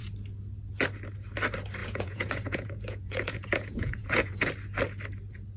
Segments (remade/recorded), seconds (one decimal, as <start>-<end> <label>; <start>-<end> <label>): 0.0-1.8 recorded; 1.8-4.5 remade; 4.5-5.6 recorded